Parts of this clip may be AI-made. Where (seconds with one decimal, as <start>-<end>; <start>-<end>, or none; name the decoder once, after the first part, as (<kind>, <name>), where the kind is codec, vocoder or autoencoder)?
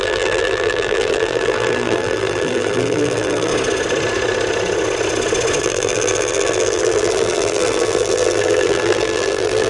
0.0-3.5 (vocoder, BigVGAN v2); 5.6-9.7